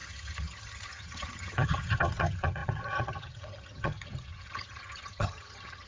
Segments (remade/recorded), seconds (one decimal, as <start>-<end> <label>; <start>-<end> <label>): 0.0-5.9 remade